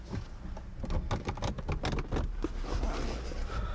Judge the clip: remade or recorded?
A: recorded